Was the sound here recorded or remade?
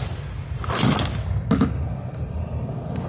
recorded